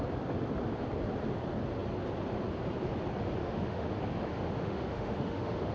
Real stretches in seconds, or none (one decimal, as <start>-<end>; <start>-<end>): 0.0-3.4; 3.9-4.3